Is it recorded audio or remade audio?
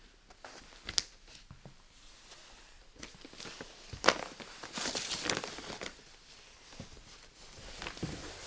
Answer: recorded